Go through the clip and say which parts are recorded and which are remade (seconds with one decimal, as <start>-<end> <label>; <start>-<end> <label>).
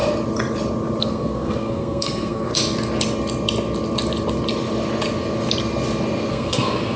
0.0-1.0 recorded; 1.0-2.5 remade; 2.5-6.3 recorded; 6.3-7.0 remade